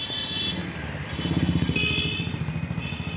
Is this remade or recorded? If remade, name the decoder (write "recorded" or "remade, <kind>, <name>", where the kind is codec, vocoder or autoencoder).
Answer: recorded